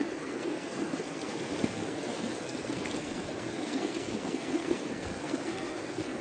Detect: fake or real fake